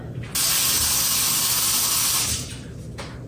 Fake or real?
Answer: real